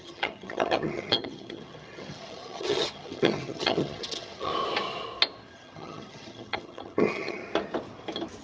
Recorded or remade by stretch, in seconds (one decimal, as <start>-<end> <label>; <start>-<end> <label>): 0.0-4.5 remade; 4.5-5.5 recorded; 5.5-7.4 remade; 7.4-8.4 recorded